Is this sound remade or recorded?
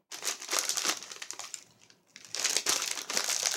recorded